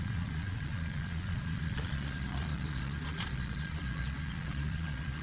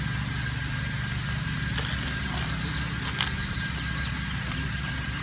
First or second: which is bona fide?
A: second